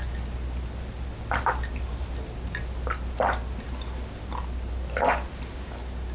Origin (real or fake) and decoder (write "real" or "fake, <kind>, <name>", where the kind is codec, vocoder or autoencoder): real